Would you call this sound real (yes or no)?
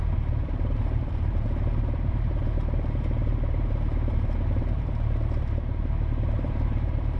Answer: no